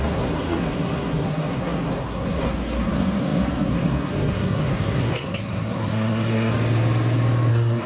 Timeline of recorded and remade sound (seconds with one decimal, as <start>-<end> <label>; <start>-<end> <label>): 0.0-6.5 remade; 6.5-7.5 recorded; 7.5-7.9 remade